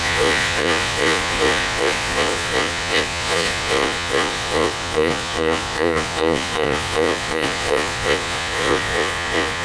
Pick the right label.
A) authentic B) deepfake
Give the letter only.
B